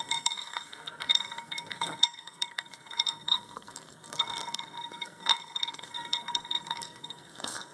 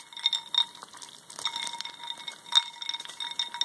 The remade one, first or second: first